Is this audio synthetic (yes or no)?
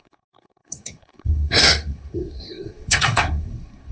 yes